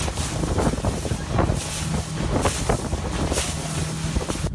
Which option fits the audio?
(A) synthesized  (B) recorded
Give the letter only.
B